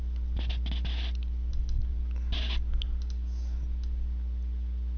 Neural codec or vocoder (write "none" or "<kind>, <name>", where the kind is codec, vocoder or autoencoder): none